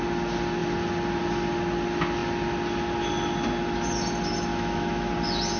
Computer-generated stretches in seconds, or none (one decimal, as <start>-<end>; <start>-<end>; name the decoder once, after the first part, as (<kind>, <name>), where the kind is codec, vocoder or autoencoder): 4.5-5.1 (autoencoder, DAC-VAE)